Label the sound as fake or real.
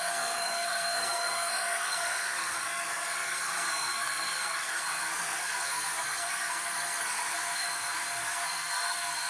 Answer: fake